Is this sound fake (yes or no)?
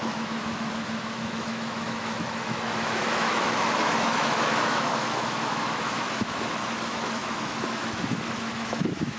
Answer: yes